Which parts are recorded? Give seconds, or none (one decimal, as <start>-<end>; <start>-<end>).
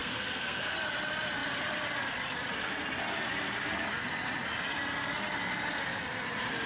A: 0.7-6.7